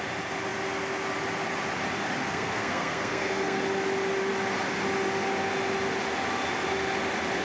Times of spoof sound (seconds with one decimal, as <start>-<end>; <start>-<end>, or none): 2.2-3.6